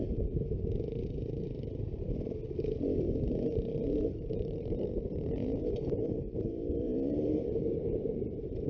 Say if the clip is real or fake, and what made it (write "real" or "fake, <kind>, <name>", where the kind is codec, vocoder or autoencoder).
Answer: fake, vocoder, BigVGAN v2